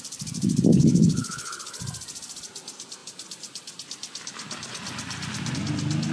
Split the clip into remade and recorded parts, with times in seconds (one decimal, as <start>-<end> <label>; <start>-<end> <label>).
0.0-0.7 recorded; 0.7-1.8 remade; 1.8-6.1 recorded